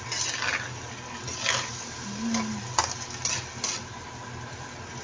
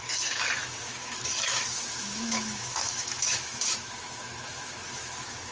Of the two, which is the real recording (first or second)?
first